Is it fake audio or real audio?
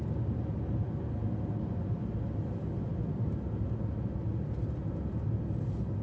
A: real